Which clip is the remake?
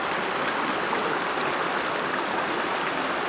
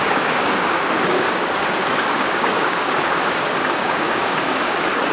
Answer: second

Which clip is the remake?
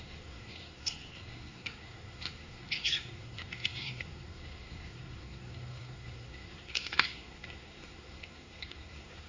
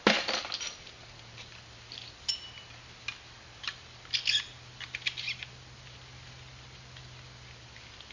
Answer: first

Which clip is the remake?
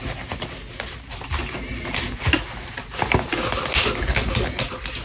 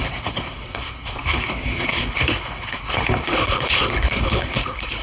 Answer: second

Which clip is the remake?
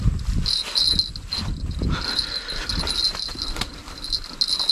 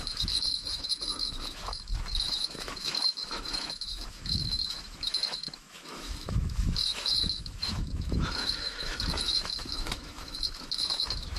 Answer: second